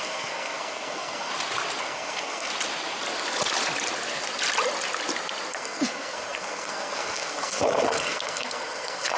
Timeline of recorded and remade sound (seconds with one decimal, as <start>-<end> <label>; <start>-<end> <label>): 0.0-1.3 remade; 1.3-1.8 recorded; 1.8-2.5 remade; 2.5-5.5 recorded; 5.5-9.2 remade